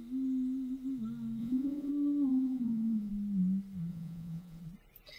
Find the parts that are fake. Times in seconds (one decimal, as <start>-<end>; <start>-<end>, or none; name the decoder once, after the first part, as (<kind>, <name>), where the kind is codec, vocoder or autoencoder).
1.4-1.9 (vocoder, Vocos); 2.3-3.1; 3.9-4.6